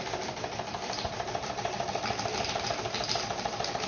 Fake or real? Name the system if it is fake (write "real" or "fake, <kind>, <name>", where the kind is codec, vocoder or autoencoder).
real